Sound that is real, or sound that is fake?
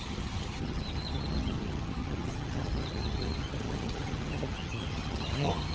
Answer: fake